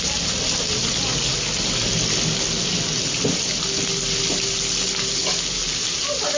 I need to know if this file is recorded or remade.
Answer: recorded